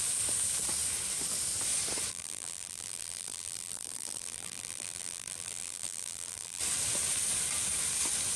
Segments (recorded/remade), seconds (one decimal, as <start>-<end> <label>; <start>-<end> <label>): 0.0-2.1 recorded; 2.1-6.6 remade; 6.6-8.4 recorded

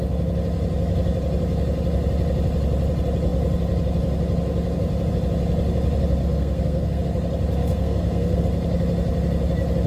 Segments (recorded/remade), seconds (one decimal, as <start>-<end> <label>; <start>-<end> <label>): 0.0-6.2 recorded; 6.2-7.0 remade; 7.0-7.6 recorded; 7.6-8.4 remade; 8.4-9.9 recorded

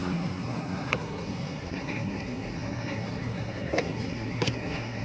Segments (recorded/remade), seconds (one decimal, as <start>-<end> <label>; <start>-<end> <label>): 0.0-5.0 remade